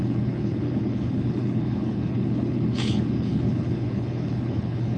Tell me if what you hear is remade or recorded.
remade